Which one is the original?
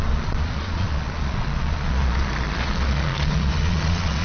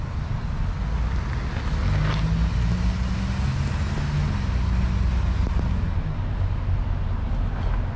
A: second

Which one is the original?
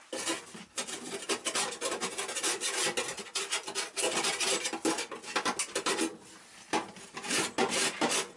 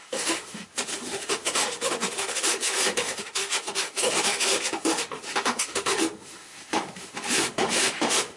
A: first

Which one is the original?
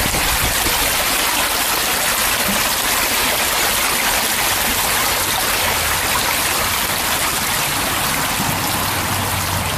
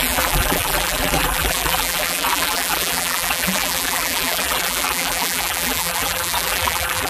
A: first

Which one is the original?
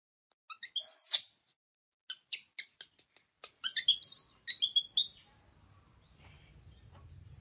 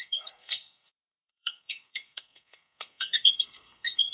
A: first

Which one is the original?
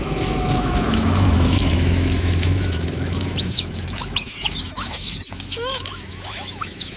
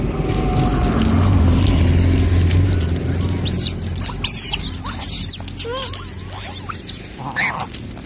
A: second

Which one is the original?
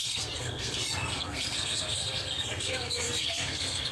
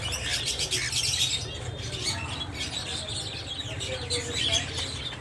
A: second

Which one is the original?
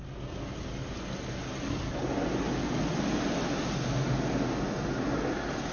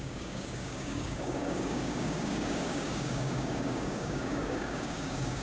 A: first